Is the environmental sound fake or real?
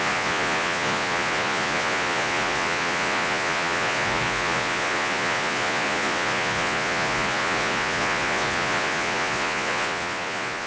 fake